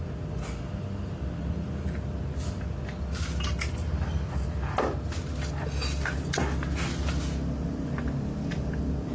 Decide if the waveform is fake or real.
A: real